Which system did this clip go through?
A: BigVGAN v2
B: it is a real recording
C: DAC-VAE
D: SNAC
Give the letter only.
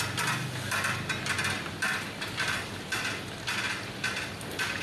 B